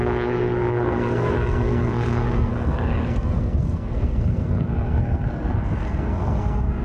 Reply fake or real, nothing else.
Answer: fake